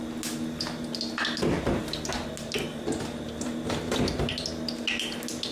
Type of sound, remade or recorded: recorded